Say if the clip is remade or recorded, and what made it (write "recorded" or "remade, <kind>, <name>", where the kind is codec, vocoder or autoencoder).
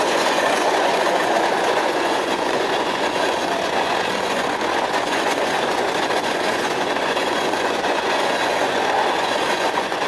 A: remade, vocoder, Vocos